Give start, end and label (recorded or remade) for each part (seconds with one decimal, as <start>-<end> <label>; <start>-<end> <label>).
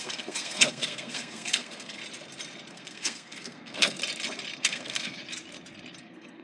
0.0-2.0 remade; 2.0-2.7 recorded; 2.7-4.0 remade; 4.0-4.6 recorded; 4.6-5.2 remade; 5.2-6.0 recorded; 6.0-6.4 remade